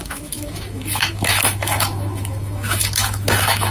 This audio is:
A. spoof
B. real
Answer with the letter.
A